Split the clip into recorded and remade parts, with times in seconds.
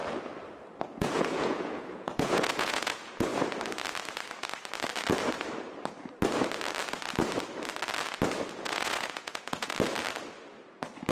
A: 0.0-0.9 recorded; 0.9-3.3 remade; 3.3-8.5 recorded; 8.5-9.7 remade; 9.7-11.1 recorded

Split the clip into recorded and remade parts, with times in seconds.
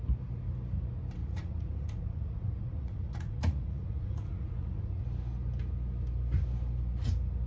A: 0.0-1.2 recorded; 1.2-5.0 remade; 5.0-7.5 recorded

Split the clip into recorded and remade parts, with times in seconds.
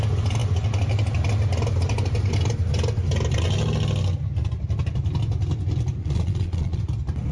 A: 0.0-6.0 recorded; 6.0-6.8 remade; 6.8-7.3 recorded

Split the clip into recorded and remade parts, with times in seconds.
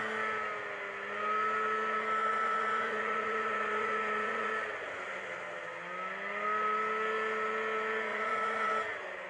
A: 0.0-2.2 recorded; 2.2-4.5 remade; 4.5-8.1 recorded; 8.1-8.7 remade; 8.7-9.3 recorded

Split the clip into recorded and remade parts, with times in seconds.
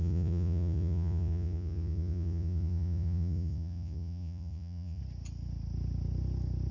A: 0.0-5.0 remade; 5.0-6.7 recorded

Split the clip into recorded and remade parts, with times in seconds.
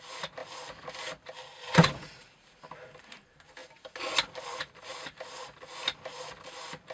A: 0.0-1.5 recorded; 1.5-2.1 remade; 2.1-6.9 recorded